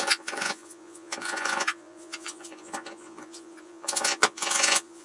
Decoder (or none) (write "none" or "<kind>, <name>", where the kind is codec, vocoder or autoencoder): vocoder, Vocos